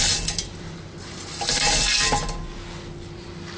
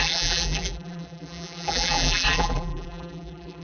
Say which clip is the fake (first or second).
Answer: second